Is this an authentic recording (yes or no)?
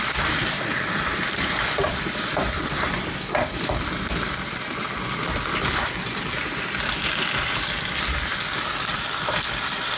no